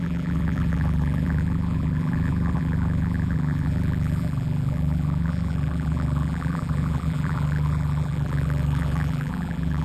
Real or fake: fake